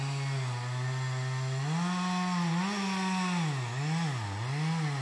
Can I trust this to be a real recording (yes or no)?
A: yes